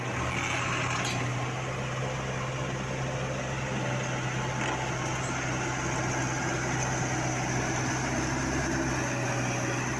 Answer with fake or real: real